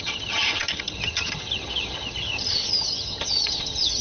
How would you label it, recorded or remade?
remade